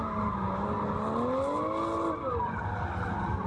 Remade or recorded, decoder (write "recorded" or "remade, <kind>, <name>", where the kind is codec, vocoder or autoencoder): recorded